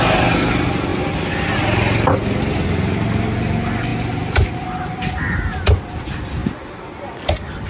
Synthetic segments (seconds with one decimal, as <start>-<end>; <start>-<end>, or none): none